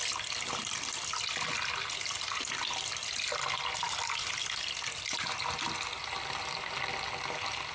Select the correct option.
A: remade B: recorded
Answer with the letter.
B